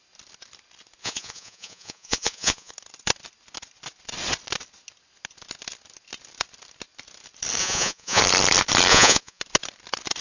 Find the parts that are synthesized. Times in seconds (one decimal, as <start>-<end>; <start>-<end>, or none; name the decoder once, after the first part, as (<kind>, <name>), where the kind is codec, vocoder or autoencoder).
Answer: 1.0-2.7 (vocoder, Vocos); 7.6-8.2; 8.9-9.4